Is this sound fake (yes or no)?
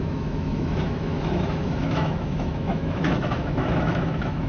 yes